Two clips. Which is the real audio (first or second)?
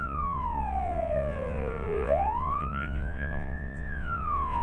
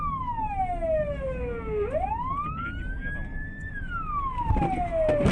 second